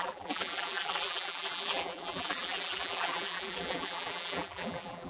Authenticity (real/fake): fake